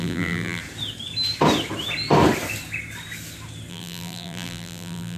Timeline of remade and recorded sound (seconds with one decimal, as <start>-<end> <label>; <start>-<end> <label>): 0.0-0.6 remade; 0.6-3.7 recorded; 3.7-5.2 remade